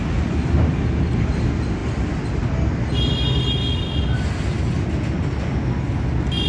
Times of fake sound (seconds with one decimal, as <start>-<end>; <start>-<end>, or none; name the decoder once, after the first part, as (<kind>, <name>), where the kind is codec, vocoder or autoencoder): none

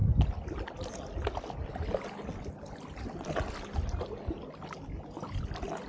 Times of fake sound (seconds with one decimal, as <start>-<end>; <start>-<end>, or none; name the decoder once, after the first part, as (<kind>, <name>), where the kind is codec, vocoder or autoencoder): none